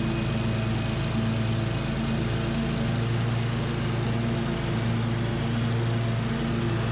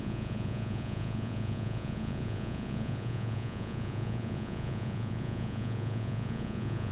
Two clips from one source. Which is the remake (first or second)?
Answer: second